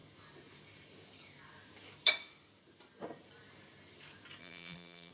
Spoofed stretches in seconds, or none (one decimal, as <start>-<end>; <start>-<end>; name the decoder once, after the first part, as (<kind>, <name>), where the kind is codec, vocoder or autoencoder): 4.4-5.1 (vocoder, BigVGAN v2)